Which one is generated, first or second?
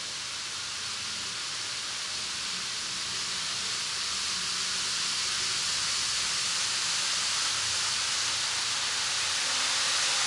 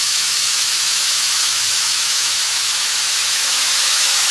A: second